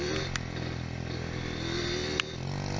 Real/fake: real